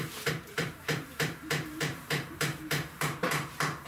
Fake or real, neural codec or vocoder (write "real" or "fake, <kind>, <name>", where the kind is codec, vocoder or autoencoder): fake, vocoder, BigVGAN v2